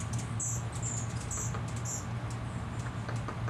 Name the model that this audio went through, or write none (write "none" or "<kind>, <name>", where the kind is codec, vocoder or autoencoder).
none